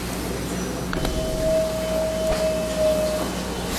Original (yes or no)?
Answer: yes